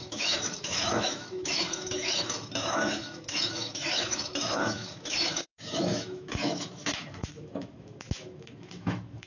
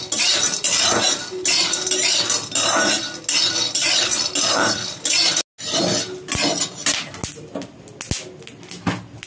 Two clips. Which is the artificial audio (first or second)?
first